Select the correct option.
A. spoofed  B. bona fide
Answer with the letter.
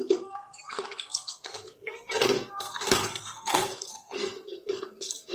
A